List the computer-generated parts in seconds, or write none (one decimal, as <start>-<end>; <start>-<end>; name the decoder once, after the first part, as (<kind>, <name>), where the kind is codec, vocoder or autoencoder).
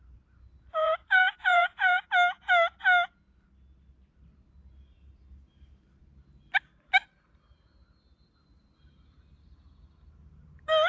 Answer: 0.8-2.0 (vocoder, Vocos)